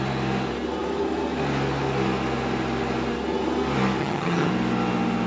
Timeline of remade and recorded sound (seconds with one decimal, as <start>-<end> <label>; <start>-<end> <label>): 0.0-4.0 recorded; 4.0-4.5 remade; 4.5-5.3 recorded

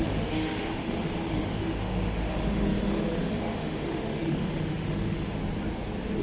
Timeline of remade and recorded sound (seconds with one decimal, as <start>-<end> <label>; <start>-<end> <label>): 0.0-5.4 remade; 5.4-6.2 recorded

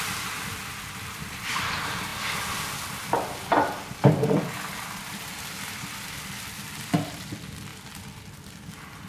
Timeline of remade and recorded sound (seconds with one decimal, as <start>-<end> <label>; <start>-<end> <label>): 0.0-9.1 remade

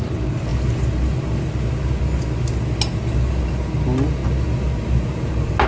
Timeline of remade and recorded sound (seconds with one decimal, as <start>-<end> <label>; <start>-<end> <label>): 0.0-5.7 recorded

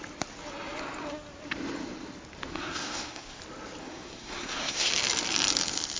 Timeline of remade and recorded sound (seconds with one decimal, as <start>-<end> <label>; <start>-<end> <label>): 0.0-2.5 recorded; 2.5-3.4 remade; 3.4-3.8 recorded; 3.8-4.9 remade; 4.9-6.0 recorded

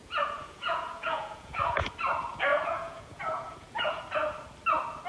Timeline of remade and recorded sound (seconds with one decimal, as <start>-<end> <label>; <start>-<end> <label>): 0.0-1.9 remade; 1.9-2.5 recorded; 2.5-4.0 remade; 4.0-5.1 recorded

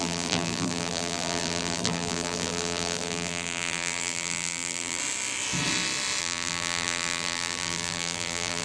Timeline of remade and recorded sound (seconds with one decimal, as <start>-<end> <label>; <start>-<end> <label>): 0.0-5.0 remade; 5.0-6.2 recorded; 6.2-8.6 remade

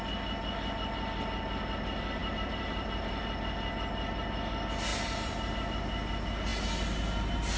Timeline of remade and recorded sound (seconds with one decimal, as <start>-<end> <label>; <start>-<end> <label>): 0.0-2.2 recorded; 2.2-3.7 remade; 3.7-4.9 recorded; 4.9-5.5 remade; 5.5-7.6 recorded